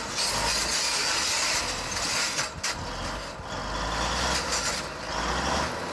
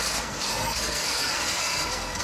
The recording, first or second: first